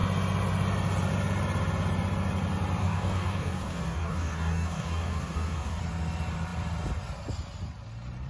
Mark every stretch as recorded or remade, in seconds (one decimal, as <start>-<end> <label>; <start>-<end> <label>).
0.0-2.8 recorded; 2.8-5.8 remade; 5.8-8.3 recorded